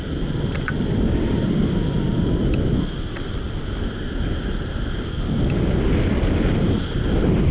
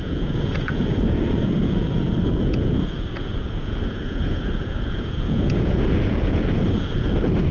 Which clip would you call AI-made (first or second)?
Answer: second